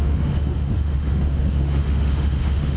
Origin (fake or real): fake